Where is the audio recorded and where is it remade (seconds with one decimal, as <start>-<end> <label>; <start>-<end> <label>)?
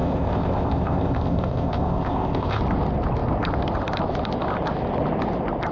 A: 0.0-2.6 remade; 2.6-5.7 recorded